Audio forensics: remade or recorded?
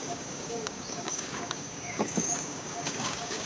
remade